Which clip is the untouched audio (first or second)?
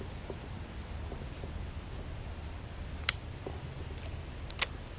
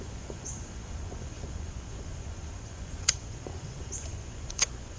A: first